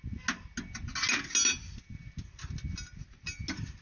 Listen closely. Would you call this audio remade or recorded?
recorded